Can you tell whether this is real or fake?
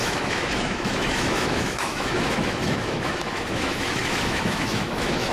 fake